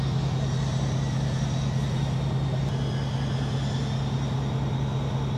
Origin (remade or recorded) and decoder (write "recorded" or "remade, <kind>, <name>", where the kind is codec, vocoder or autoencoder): recorded